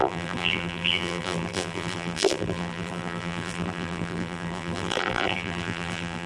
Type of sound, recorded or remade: remade